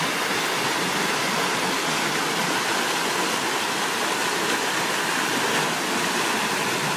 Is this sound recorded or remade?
recorded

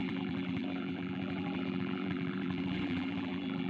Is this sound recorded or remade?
remade